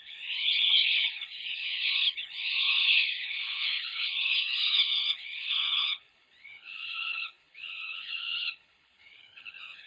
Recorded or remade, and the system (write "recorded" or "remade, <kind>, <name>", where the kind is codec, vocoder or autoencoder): remade, codec, HILCodec